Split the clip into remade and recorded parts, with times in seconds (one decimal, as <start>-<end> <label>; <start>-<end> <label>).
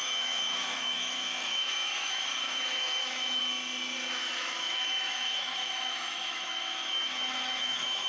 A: 0.0-3.4 remade; 3.4-4.2 recorded; 4.2-8.1 remade